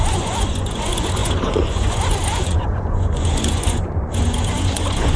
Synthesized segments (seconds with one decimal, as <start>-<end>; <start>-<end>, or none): 0.0-5.2